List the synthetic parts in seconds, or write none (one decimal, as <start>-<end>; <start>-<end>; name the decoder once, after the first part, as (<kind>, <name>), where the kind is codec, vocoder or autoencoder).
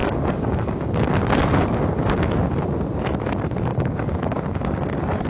0.0-2.3 (codec, DAC); 3.7-4.8